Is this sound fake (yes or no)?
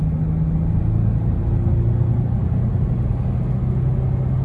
no